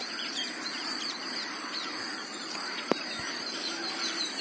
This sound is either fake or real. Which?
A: fake